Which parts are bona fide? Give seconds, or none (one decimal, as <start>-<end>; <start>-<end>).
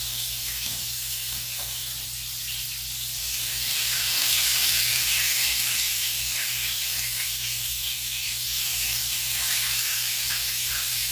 1.9-3.2